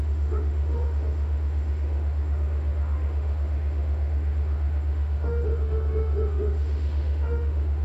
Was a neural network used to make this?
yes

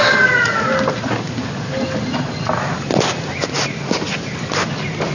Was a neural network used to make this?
no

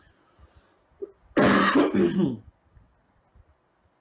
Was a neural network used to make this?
no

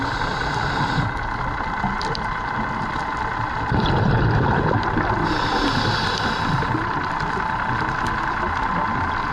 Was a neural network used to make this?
no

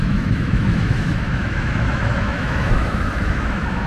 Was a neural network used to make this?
yes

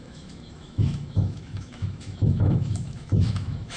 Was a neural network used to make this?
yes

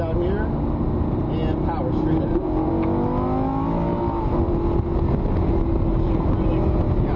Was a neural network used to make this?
no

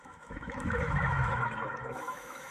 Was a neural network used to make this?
yes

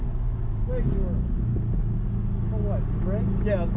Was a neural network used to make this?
no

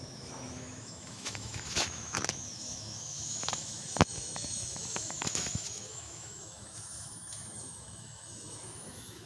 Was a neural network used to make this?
yes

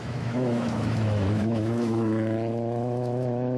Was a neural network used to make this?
yes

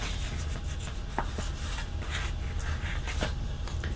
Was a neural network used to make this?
no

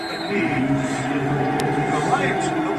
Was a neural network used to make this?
no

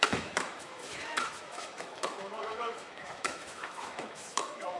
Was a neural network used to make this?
yes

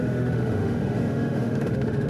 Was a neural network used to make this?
yes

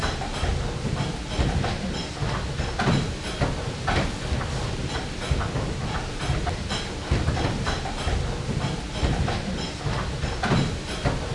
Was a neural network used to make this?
no